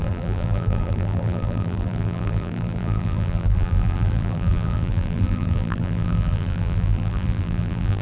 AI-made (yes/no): yes